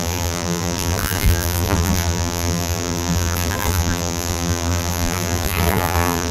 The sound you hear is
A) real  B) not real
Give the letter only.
B